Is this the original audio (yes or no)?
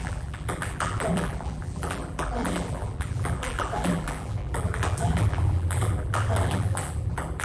no